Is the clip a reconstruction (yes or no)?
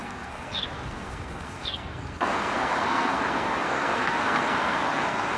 yes